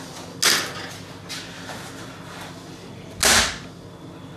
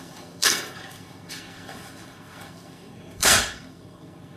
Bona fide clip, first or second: first